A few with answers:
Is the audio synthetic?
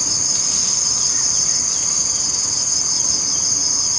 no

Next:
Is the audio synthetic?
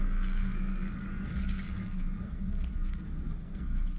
yes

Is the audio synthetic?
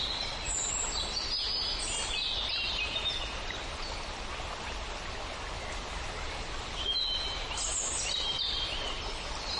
no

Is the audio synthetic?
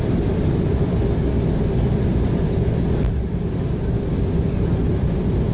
no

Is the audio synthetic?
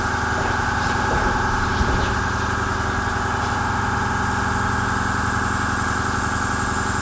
no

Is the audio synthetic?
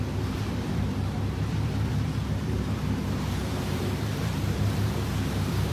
yes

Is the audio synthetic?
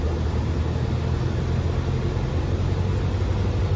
no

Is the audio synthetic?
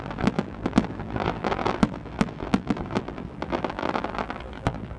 yes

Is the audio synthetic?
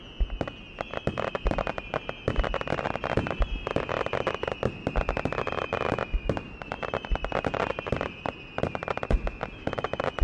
no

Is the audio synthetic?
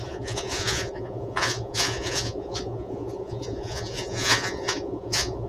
yes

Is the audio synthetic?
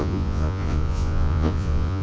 yes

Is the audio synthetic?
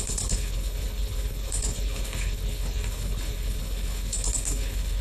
yes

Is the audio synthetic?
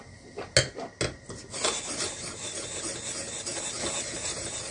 no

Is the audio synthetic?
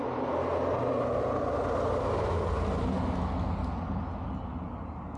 no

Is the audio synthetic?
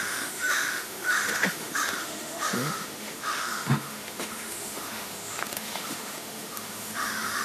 yes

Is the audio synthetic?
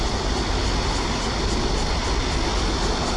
no